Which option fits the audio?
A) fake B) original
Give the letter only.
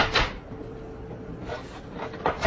A